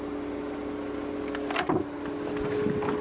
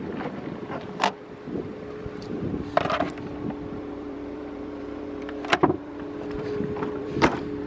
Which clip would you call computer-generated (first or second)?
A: second